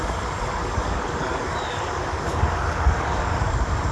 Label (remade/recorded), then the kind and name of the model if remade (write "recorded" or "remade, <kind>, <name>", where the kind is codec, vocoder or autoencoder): remade, codec, DAC